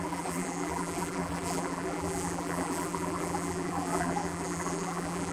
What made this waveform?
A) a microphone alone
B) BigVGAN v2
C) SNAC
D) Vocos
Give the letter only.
B